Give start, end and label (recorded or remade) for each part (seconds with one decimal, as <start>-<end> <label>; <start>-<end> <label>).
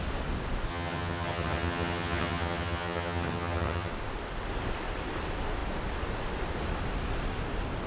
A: 0.0-0.7 recorded; 0.7-3.9 remade; 3.9-7.9 recorded